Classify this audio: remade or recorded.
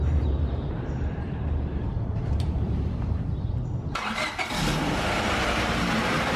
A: remade